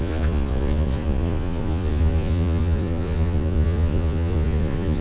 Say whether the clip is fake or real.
fake